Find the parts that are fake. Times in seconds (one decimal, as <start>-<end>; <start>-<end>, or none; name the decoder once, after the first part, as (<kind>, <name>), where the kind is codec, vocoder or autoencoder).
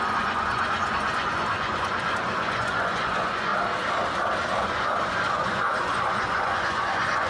0.0-3.5 (vocoder, Vocos); 4.5-7.3